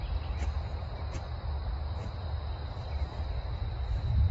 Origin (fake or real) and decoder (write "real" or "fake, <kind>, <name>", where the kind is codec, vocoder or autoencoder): real